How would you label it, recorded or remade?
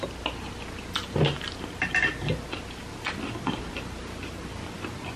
recorded